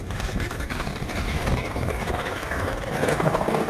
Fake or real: fake